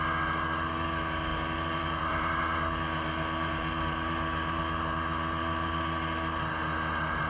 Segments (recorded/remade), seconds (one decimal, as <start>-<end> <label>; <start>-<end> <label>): 0.0-1.3 recorded; 1.3-2.4 remade; 2.4-7.3 recorded